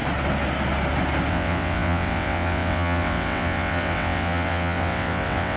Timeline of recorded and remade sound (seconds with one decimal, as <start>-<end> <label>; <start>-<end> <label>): 0.0-1.3 recorded; 1.3-5.6 remade